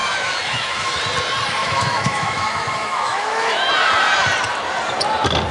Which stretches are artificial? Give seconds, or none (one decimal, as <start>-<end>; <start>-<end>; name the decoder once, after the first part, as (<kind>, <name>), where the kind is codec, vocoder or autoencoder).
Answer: 0.0-1.0 (autoencoder, DAC-VAE); 1.6-3.7